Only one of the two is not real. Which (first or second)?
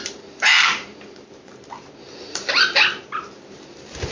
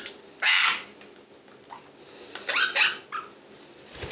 first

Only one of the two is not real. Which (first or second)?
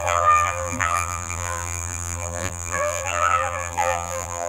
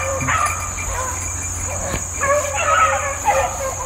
first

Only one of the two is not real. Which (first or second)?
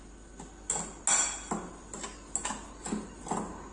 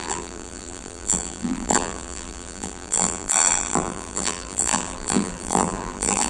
second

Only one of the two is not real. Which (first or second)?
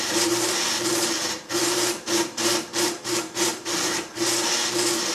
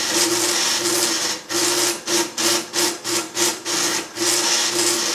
first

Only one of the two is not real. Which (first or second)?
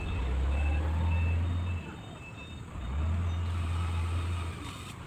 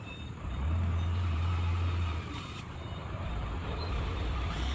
second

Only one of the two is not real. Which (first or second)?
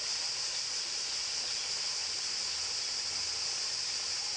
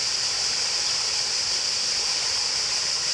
second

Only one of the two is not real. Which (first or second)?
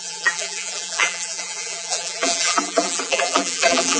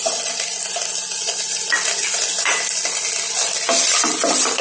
first